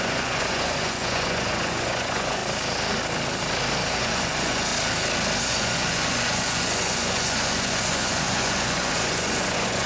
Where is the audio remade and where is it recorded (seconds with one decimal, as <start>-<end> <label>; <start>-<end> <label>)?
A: 0.0-2.4 remade; 2.4-3.9 recorded; 3.9-4.7 remade; 4.7-5.4 recorded; 5.4-9.9 remade